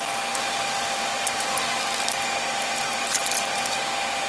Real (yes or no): yes